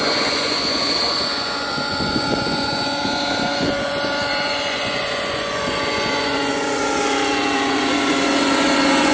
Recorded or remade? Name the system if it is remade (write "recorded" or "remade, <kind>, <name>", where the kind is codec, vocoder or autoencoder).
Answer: remade, vocoder, Vocos